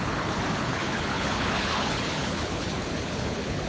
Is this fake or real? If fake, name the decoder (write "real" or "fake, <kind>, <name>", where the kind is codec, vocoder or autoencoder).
fake, codec, HILCodec